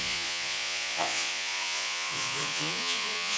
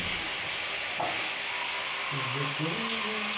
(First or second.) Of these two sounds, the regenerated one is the first